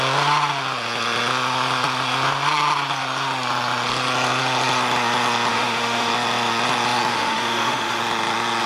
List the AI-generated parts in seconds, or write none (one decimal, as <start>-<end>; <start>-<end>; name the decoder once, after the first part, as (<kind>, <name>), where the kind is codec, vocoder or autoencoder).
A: 5.5-6.1 (autoencoder, DAC-VAE); 7.1-8.0